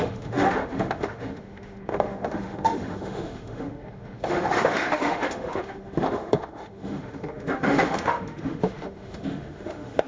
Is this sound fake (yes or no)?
yes